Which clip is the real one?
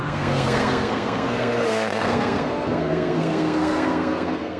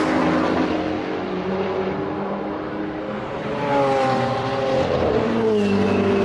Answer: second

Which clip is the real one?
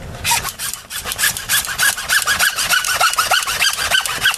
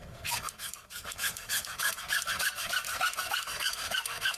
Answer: first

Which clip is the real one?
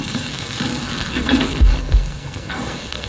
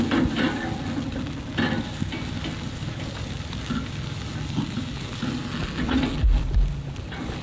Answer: second